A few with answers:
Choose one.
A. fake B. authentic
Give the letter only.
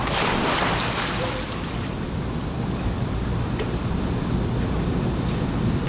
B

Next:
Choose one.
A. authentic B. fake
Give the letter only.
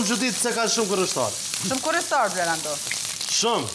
A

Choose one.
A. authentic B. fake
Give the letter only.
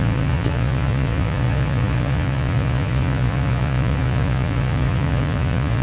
B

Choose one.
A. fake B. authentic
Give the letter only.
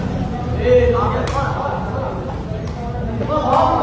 B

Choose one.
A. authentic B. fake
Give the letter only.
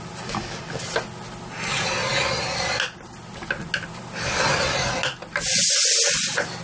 A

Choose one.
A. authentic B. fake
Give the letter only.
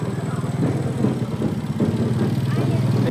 A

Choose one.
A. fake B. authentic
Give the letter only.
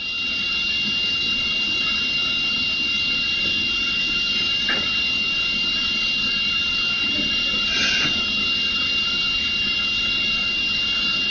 B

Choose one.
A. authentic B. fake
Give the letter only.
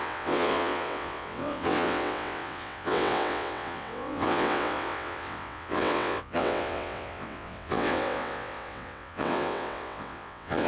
B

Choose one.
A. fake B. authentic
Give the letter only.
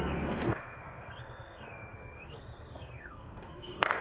A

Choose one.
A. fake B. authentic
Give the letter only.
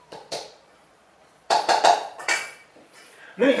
A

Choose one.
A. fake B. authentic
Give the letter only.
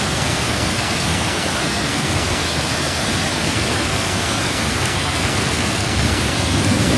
A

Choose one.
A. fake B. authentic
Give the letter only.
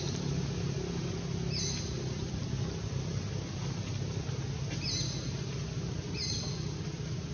B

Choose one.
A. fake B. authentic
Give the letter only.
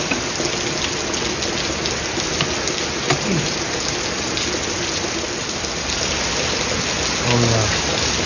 B